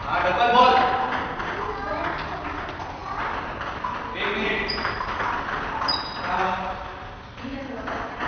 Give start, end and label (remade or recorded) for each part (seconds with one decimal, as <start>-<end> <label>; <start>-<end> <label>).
0.0-8.3 recorded